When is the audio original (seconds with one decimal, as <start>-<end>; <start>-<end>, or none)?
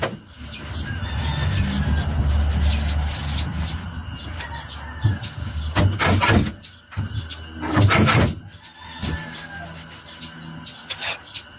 0.0-11.6